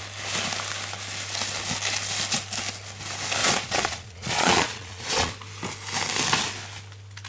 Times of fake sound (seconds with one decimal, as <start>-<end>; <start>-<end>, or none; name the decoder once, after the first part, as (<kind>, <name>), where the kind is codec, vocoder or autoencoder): 3.4-5.3 (vocoder, Vocos)